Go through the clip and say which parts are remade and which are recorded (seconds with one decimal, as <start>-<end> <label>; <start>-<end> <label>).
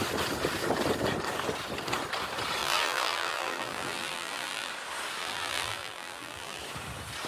0.0-2.6 recorded; 2.6-4.7 remade; 4.7-5.2 recorded; 5.2-6.6 remade; 6.6-7.3 recorded